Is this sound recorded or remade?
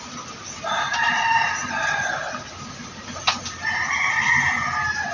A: recorded